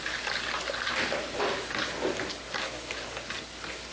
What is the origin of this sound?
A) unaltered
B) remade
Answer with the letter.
A